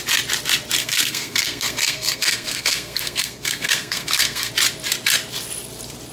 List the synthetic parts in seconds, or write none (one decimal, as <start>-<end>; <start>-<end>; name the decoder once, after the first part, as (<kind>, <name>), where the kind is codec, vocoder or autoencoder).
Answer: 0.8-4.5 (codec, SNAC)